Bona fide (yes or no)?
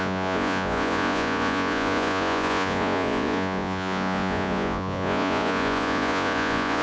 no